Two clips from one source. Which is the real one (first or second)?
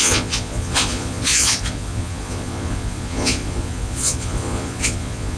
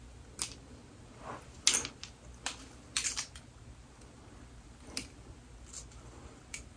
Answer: second